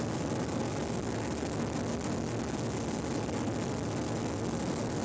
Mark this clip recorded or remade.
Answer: recorded